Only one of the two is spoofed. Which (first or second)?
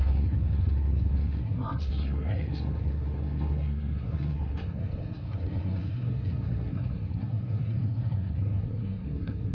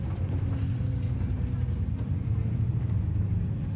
first